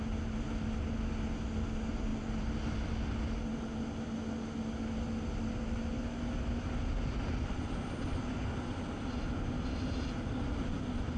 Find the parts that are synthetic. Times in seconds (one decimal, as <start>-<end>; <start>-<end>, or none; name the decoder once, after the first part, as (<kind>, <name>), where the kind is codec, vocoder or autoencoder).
none